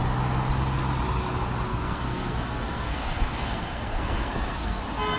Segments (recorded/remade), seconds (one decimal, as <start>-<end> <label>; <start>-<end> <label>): 0.0-1.7 recorded; 1.7-4.8 remade; 4.8-5.2 recorded